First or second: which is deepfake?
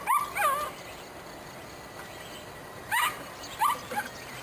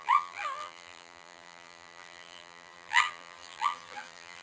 second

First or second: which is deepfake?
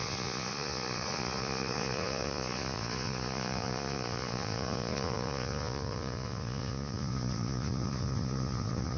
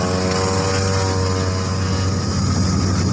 first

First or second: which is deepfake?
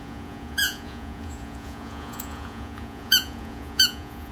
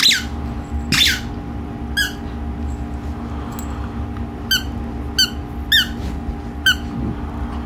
first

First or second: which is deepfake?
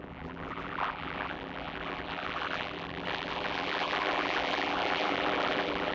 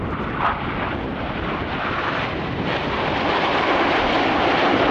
first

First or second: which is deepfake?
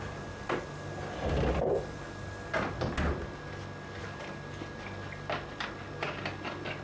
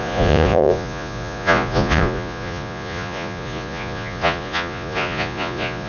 second